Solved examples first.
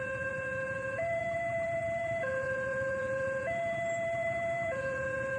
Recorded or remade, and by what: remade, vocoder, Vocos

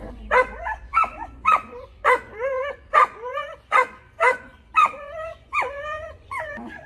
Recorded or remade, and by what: remade, vocoder, Vocos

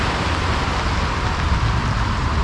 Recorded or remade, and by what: recorded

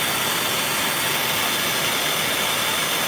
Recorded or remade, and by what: recorded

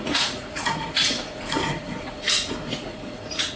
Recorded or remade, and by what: remade, vocoder, Vocos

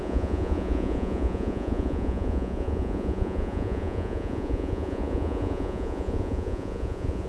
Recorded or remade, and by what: remade, vocoder, Vocos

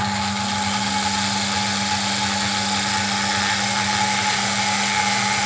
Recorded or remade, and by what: recorded